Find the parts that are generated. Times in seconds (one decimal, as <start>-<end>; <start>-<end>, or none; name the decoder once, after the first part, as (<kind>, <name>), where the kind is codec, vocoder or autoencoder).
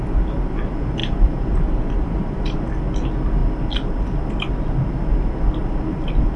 1.0-2.4 (vocoder, BigVGAN v2)